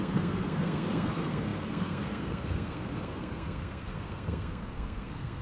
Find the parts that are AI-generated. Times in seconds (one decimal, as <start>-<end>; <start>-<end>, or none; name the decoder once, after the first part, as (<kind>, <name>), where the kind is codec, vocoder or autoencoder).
0.0-5.4 (codec, SNAC)